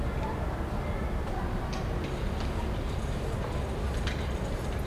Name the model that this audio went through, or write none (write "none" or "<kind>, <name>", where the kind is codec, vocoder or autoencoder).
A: none